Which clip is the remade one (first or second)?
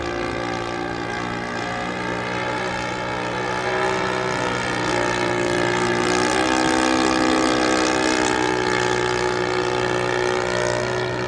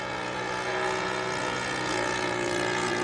second